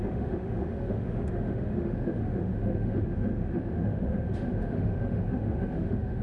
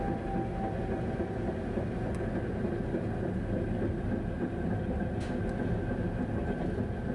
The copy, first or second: first